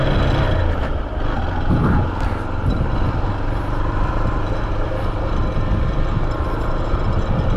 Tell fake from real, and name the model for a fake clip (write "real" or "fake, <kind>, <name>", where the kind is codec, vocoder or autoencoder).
real